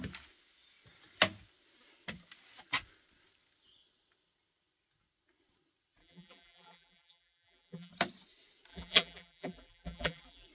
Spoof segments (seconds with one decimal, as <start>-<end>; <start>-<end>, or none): 6.0-7.9; 8.7-10.5